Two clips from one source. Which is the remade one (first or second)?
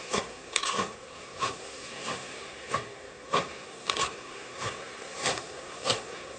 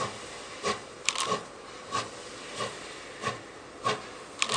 first